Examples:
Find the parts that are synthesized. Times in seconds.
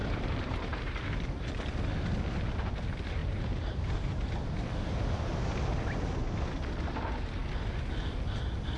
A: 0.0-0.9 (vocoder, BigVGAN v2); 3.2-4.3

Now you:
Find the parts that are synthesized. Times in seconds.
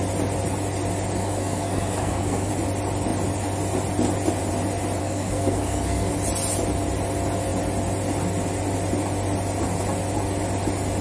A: 1.2-2.5 (codec, SNAC); 5.0-6.1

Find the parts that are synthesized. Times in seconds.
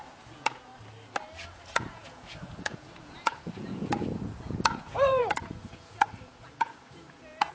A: 0.0-0.7 (vocoder, Vocos); 1.5-7.5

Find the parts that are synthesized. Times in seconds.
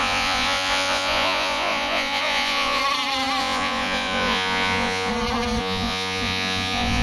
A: 0.0-2.8 (vocoder, Vocos); 3.4-5.1; 5.6-7.0